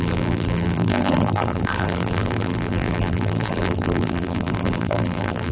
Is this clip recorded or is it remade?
remade